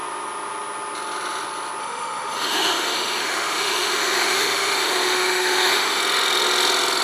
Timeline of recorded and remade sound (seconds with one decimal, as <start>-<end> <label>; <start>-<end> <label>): 0.0-1.8 recorded; 1.8-6.0 remade; 6.0-7.0 recorded